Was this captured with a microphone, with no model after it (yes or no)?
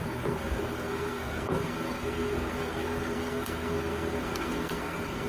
no